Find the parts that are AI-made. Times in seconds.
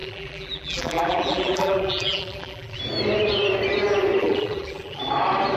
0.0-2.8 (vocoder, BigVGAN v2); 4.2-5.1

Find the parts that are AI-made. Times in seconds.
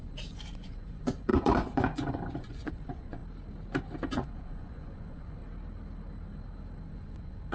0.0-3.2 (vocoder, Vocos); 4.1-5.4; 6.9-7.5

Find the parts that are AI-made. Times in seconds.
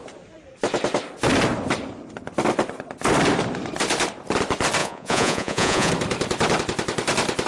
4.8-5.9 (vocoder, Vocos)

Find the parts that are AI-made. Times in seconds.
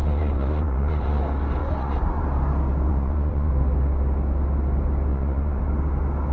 0.0-1.2 (vocoder, Vocos); 1.6-2.2; 2.9-3.5; 5.1-5.6